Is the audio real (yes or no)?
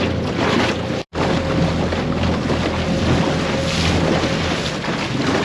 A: yes